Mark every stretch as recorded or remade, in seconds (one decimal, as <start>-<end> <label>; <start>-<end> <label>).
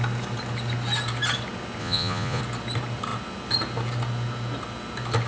0.0-1.8 recorded; 1.8-2.4 remade; 2.4-5.3 recorded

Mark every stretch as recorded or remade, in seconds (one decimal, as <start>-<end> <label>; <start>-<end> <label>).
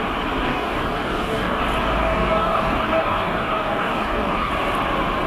0.0-0.4 recorded; 0.4-1.6 remade; 1.6-2.0 recorded; 2.0-4.5 remade; 4.5-5.3 recorded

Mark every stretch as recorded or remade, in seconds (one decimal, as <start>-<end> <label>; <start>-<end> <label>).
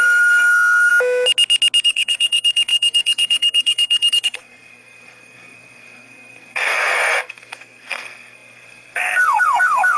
0.0-0.9 remade; 0.9-1.8 recorded; 1.8-10.0 remade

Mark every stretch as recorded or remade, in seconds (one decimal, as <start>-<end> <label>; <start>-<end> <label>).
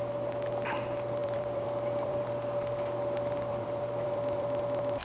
0.0-1.2 recorded; 1.2-2.2 remade; 2.2-3.5 recorded; 3.5-5.0 remade